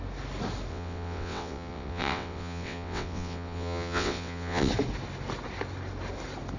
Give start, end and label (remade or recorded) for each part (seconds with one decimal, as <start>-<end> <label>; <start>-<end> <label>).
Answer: 0.0-0.7 recorded; 0.7-4.7 remade; 4.7-6.6 recorded